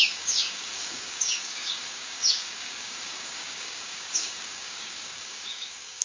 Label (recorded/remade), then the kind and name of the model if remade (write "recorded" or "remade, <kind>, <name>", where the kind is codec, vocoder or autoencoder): remade, codec, DAC